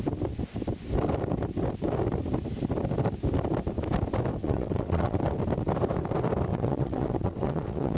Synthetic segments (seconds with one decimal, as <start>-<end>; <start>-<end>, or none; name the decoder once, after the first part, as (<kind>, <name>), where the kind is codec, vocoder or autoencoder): 4.4-5.2 (vocoder, WaveNeXt); 6.5-8.0